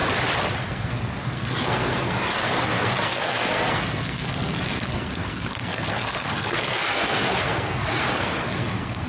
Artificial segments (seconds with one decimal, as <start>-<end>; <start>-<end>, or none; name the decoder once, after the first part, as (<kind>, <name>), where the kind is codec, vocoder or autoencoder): 0.6-9.1 (codec, SNAC)